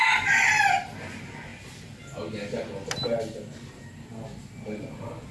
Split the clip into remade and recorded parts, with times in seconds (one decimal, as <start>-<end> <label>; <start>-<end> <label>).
0.0-5.3 recorded